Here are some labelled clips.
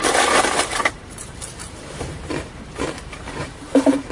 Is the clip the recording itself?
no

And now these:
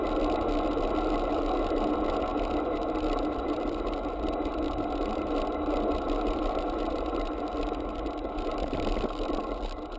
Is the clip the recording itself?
yes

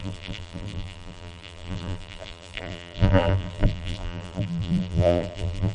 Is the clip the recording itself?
no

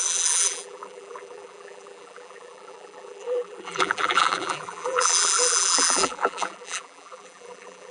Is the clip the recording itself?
no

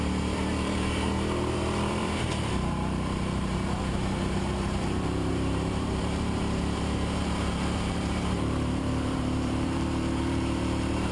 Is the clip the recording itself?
no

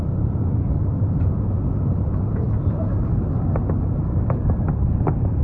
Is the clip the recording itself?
yes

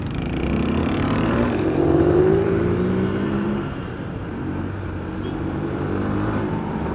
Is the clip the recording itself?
no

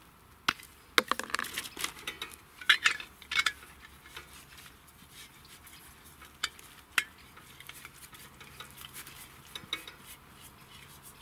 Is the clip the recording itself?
yes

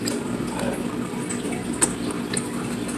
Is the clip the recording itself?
yes